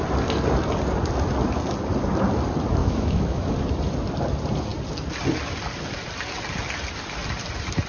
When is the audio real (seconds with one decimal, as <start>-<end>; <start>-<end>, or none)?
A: 0.0-2.8; 3.5-7.9